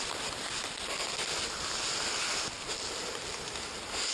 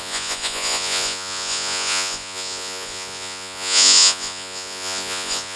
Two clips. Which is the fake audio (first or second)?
second